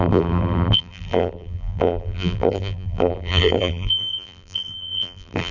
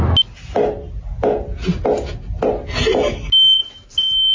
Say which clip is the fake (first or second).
first